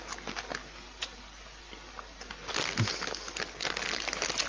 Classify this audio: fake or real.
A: real